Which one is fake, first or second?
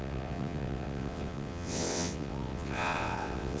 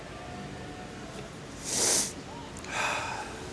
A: first